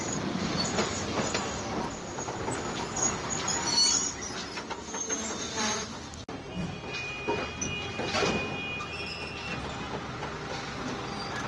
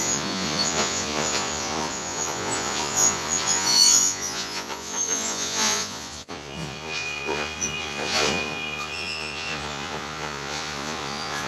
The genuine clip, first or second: first